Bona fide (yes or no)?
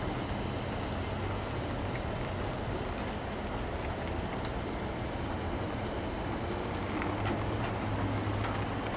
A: yes